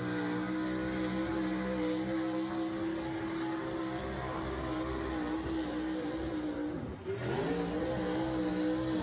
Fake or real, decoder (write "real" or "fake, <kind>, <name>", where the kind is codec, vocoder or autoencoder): real